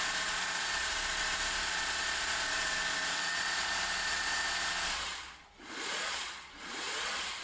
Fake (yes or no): yes